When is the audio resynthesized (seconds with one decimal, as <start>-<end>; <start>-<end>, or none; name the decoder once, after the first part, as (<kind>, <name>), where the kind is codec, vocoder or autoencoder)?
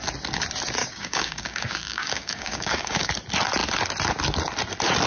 0.8-3.1 (codec, DAC)